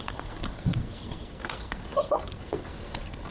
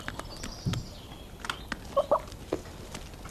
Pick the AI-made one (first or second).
first